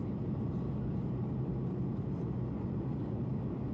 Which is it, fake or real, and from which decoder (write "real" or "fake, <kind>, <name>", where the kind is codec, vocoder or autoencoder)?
real